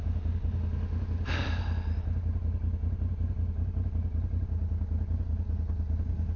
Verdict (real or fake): real